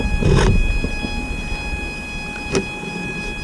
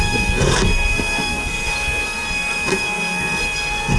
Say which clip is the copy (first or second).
second